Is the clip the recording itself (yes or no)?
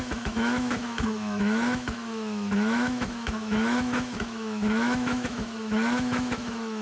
no